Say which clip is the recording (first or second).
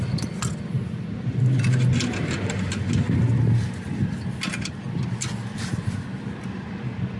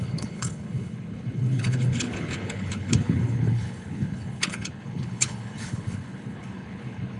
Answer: first